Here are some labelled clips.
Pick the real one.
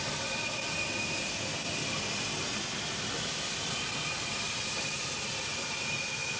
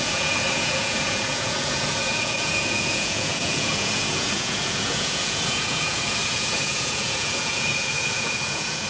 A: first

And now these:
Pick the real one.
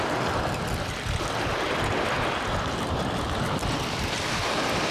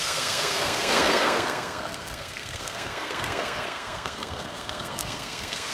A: first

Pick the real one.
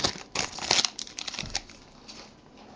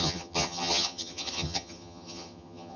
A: first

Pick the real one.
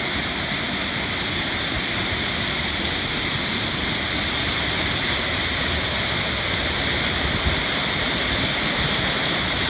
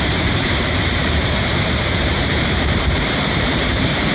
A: first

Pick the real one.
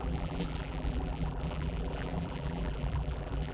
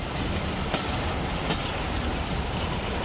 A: second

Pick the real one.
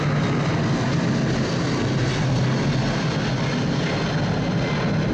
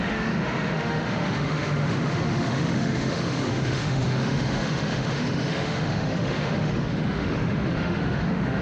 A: first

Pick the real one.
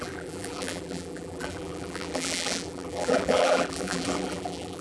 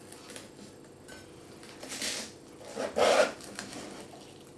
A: second